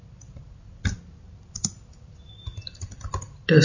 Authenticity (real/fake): real